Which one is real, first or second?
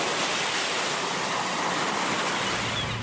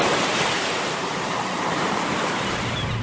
first